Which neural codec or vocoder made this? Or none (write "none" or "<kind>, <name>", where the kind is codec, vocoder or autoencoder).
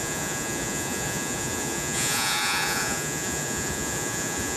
vocoder, Vocos